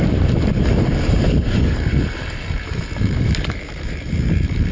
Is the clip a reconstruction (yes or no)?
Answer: yes